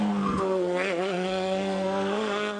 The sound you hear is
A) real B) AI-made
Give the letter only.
B